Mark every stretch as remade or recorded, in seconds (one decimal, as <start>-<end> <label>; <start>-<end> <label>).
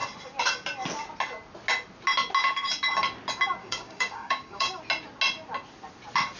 0.0-3.6 recorded; 3.6-4.8 remade; 4.8-6.4 recorded